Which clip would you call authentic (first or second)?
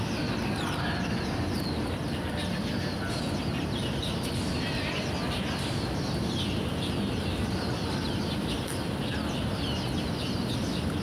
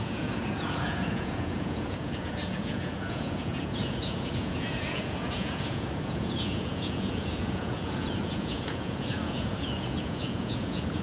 first